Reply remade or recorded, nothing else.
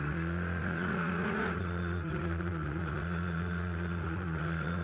remade